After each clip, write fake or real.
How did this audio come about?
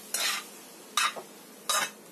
real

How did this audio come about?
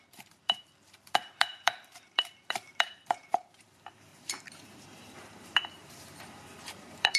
fake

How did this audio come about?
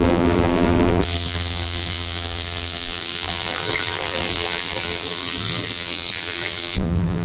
fake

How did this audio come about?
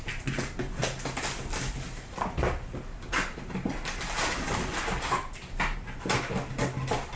real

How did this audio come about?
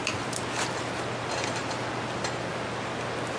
real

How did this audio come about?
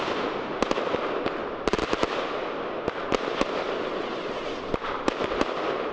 real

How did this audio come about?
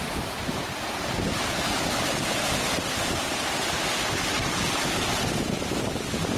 real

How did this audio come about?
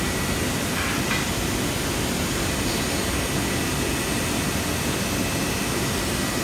real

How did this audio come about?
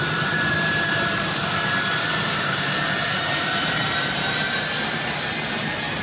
fake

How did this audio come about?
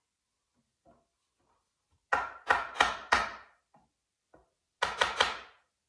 real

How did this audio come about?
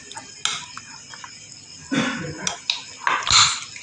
real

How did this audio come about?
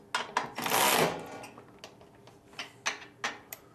real